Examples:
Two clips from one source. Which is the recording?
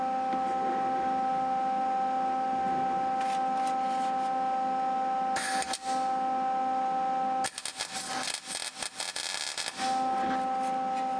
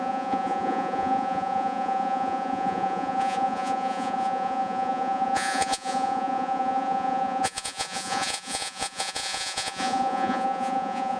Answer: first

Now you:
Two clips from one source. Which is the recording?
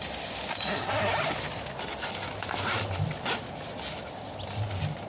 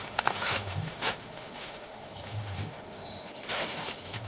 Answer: first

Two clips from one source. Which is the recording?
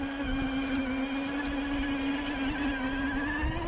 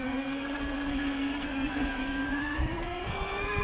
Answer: first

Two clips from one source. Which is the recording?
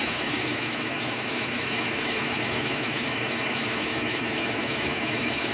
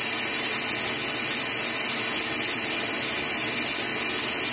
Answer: second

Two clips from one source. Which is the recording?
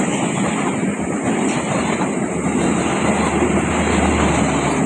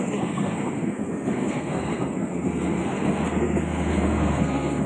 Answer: first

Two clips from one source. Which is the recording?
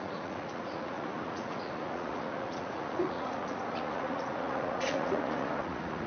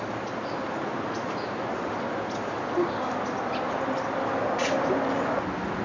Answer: second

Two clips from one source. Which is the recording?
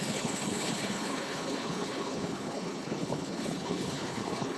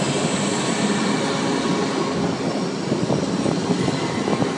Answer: second